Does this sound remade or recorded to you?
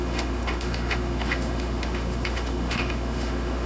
remade